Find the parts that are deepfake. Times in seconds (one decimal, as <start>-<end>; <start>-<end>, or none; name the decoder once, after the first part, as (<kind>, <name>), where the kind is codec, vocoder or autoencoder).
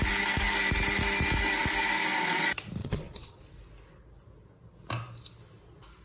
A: 2.8-3.4 (vocoder, Vocos)